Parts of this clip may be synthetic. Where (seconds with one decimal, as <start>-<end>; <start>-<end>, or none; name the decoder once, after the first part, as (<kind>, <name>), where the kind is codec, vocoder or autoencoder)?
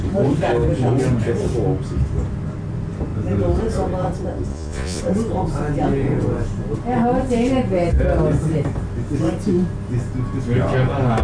4.5-5.0 (vocoder, Vocos)